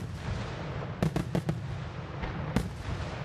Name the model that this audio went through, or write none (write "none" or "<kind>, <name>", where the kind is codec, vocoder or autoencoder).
none